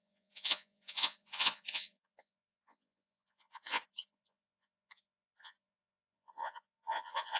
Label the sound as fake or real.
fake